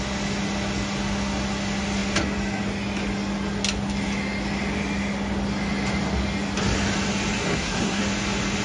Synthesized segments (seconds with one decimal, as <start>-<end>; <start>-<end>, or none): 7.4-8.0

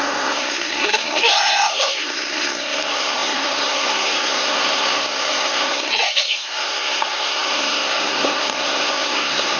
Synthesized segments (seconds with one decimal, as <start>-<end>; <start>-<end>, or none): 0.0-9.6

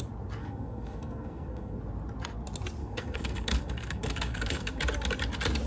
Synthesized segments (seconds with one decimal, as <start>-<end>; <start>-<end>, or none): 0.4-1.8; 2.8-4.8

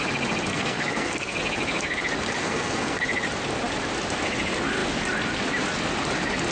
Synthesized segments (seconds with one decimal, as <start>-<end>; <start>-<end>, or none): 0.5-1.4; 2.4-3.0

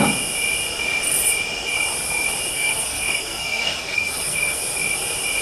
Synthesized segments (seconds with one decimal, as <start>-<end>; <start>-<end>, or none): 2.5-4.6

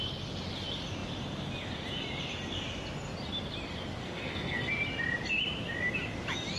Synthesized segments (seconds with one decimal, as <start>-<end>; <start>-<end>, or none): 4.0-4.7